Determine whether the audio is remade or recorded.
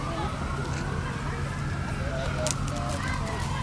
recorded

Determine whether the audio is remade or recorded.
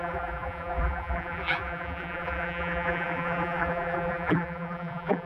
remade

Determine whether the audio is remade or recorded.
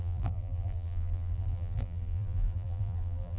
remade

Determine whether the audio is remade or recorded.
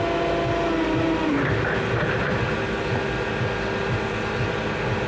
recorded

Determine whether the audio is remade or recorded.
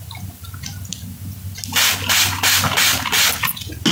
recorded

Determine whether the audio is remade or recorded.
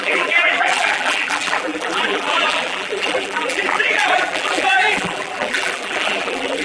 remade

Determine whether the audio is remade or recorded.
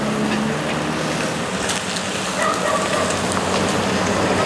recorded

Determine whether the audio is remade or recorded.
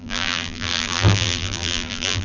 remade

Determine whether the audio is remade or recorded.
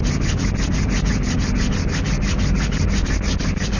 recorded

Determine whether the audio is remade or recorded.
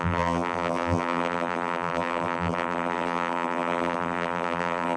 remade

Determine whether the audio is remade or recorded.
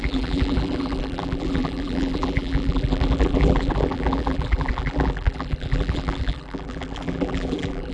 remade